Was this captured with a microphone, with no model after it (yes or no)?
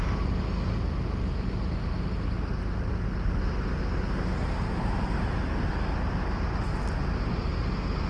yes